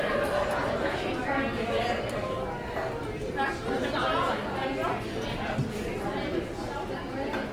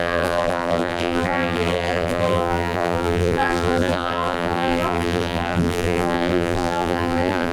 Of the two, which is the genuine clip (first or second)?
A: first